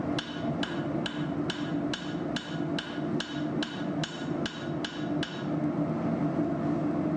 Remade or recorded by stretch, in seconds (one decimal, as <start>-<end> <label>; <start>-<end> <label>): 0.0-7.2 recorded